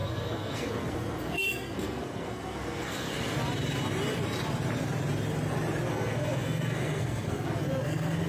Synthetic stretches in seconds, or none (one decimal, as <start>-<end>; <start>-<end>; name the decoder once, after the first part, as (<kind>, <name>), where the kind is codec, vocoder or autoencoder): 0.0-3.3 (codec, SNAC); 5.9-8.3